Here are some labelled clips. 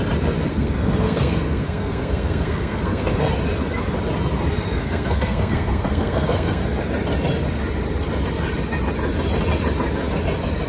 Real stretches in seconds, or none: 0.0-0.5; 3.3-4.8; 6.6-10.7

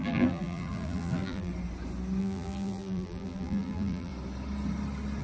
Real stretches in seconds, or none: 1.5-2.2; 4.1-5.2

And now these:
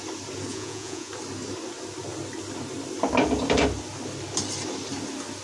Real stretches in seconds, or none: 0.0-0.5; 1.1-5.4

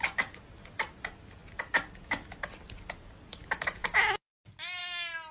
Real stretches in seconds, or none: 0.0-5.3

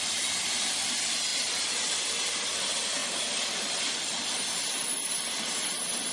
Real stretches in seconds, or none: 0.0-1.3; 1.9-3.0; 3.9-6.1

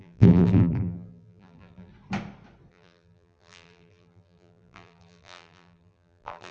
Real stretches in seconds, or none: 1.9-2.7